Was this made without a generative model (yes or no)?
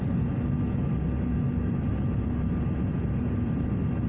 yes